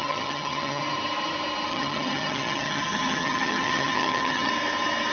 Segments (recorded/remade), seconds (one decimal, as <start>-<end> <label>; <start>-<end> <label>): 0.0-0.8 remade; 0.8-1.7 recorded; 1.7-4.5 remade; 4.5-5.1 recorded